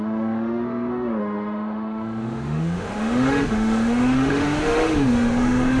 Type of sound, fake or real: fake